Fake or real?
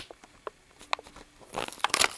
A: real